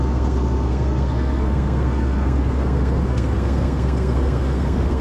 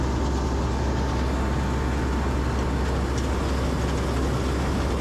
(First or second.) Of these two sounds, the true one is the second